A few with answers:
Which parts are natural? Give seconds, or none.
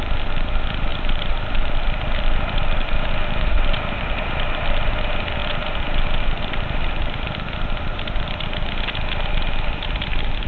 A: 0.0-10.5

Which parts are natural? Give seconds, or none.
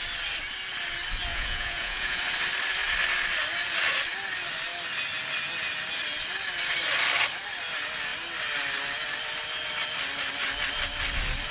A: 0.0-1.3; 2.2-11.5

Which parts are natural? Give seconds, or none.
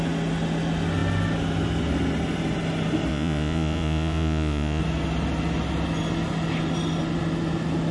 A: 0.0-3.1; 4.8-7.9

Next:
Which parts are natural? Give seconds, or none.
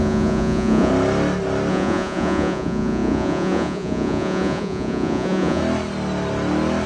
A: 0.9-1.7; 5.6-6.9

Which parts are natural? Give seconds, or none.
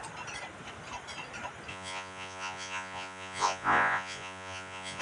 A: 0.0-1.7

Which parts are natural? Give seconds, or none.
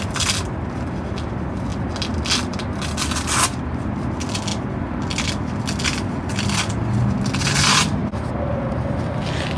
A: 0.0-9.6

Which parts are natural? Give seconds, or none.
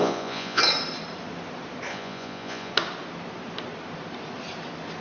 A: 0.6-1.9; 2.7-5.0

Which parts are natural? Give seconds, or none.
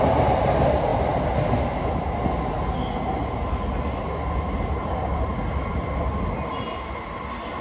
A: 0.0-7.6